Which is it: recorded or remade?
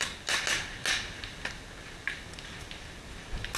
recorded